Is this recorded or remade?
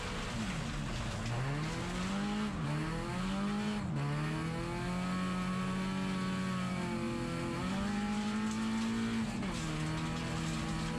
recorded